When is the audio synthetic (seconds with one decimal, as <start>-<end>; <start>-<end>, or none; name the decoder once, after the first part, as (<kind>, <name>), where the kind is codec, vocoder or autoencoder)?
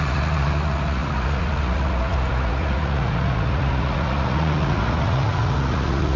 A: 0.0-6.2 (vocoder, Vocos)